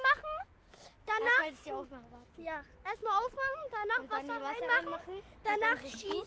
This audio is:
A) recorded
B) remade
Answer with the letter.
B